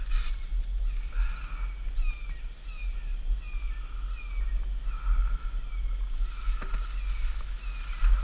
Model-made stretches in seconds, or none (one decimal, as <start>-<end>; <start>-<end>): none